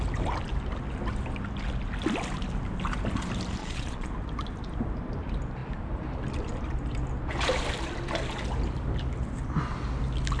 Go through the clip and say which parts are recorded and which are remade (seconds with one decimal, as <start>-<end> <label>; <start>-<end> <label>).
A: 0.0-3.6 recorded; 3.6-4.1 remade; 4.1-10.4 recorded